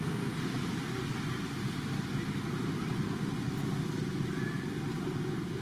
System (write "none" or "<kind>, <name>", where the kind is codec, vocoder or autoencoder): none